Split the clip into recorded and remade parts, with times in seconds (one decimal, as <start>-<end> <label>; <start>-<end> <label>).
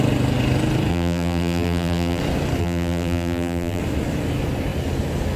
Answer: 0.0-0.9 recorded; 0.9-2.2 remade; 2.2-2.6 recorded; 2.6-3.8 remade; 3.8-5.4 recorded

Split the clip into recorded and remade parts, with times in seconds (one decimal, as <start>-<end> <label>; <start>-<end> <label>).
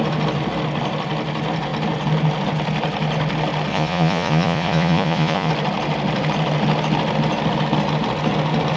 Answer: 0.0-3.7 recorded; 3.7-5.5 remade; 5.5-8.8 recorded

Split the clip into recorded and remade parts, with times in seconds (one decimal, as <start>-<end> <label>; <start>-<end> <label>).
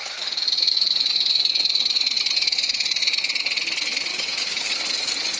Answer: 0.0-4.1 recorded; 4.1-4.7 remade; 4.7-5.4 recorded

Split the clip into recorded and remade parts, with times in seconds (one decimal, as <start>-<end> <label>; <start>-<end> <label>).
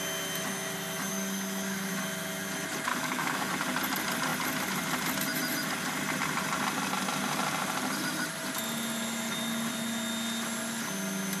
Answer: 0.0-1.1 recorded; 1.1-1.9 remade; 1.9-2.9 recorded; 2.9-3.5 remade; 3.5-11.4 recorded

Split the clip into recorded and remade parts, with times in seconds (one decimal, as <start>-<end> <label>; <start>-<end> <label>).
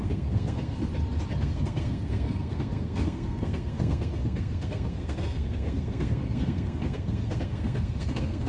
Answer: 0.0-0.9 remade; 0.9-1.4 recorded; 1.4-8.5 remade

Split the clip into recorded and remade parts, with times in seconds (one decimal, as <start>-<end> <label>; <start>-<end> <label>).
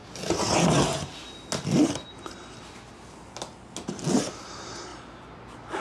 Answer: 0.0-5.8 recorded